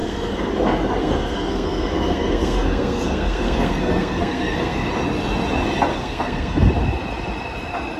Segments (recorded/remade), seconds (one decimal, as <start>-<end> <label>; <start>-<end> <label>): 0.0-0.5 remade; 0.5-1.0 recorded; 1.0-4.9 remade; 4.9-5.9 recorded; 5.9-6.7 remade; 6.7-8.0 recorded